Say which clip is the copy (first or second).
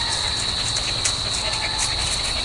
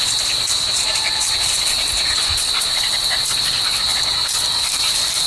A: second